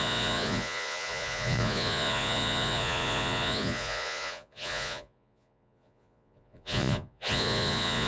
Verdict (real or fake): fake